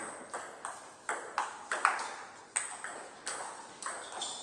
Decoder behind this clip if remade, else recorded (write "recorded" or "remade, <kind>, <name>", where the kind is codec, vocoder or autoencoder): recorded